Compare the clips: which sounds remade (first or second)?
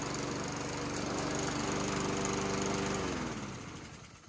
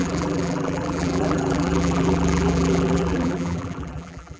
second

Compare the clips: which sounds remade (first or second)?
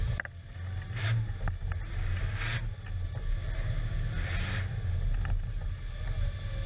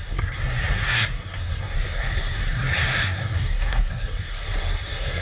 second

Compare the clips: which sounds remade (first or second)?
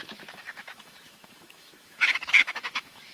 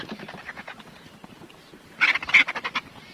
first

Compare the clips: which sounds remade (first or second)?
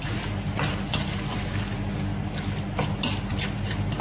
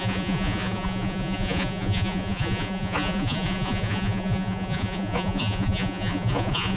second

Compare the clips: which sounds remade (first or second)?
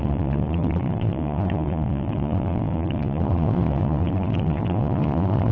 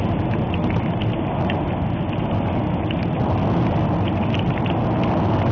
first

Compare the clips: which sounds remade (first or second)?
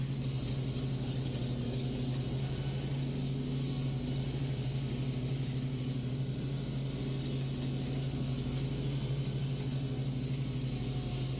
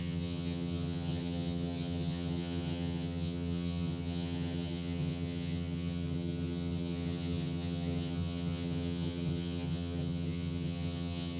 second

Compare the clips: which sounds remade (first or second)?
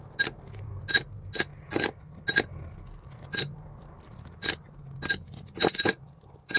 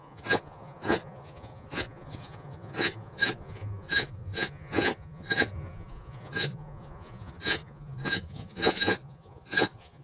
second